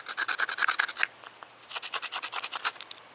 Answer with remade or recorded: recorded